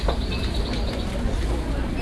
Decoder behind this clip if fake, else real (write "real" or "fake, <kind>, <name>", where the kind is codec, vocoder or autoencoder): real